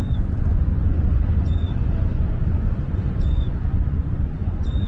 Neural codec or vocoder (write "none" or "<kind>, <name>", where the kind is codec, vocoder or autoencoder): vocoder, Vocos